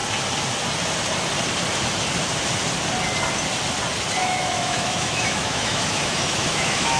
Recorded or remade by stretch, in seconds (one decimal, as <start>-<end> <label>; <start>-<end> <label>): 0.0-4.2 recorded; 4.2-7.0 remade